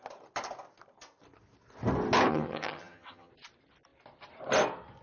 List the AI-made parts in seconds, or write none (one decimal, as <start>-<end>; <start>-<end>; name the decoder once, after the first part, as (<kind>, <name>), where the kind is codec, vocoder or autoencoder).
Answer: 2.3-3.3 (vocoder, HiFi-GAN)